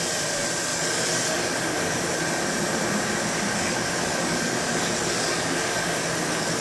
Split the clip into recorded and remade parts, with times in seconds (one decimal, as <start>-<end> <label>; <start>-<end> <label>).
0.0-0.7 recorded; 0.7-2.2 remade; 2.2-3.5 recorded; 3.5-6.6 remade